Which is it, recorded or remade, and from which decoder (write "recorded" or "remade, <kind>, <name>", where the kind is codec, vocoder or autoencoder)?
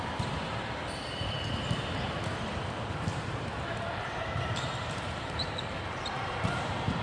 remade, vocoder, BigVGAN v2